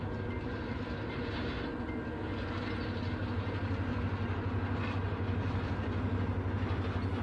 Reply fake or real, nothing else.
real